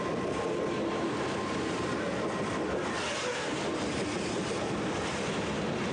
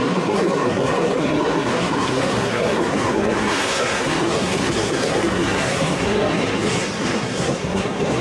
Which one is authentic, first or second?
first